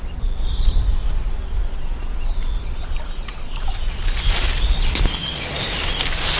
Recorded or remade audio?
recorded